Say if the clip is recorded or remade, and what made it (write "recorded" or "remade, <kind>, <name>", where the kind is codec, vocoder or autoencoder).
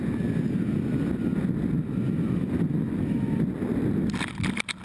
recorded